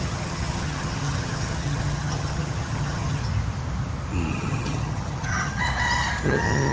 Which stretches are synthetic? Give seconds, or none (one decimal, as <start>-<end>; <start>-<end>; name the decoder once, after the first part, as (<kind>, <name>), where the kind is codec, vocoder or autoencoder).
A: 0.0-3.2 (vocoder, HiFi-GAN); 4.3-5.6; 6.2-6.7